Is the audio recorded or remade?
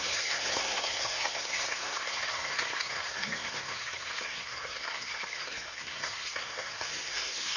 remade